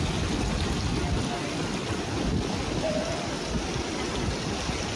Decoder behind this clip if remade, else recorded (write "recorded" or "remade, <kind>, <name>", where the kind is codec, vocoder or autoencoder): recorded